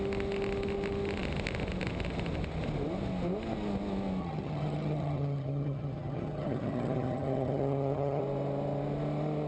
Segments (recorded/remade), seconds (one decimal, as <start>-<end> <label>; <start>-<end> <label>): 0.0-4.2 recorded; 4.2-8.2 remade; 8.2-9.5 recorded